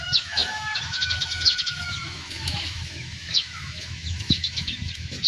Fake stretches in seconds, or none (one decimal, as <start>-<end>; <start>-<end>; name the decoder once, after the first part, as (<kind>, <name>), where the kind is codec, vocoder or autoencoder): 0.0-5.3 (autoencoder, DAC-VAE)